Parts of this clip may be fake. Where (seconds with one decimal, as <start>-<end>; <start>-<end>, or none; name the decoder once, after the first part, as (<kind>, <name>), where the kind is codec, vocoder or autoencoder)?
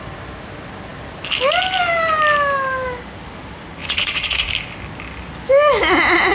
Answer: 3.8-4.5 (vocoder, Vocos)